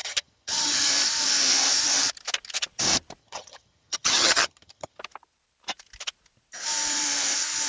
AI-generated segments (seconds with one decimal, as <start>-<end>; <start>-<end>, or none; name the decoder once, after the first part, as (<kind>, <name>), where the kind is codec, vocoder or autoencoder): 0.0-0.9 (vocoder, HiFi-GAN); 3.2-5.0